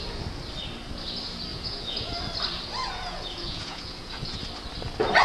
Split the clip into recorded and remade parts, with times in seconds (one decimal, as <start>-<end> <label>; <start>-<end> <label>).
0.0-1.5 recorded; 1.5-2.2 remade; 2.2-2.8 recorded; 2.8-4.4 remade; 4.4-5.2 recorded